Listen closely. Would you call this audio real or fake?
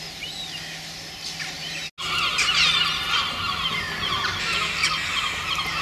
real